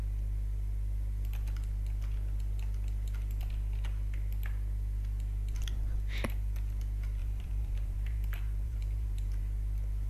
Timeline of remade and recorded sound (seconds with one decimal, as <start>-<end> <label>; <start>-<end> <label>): 0.0-7.2 recorded; 7.2-9.4 remade; 9.4-10.1 recorded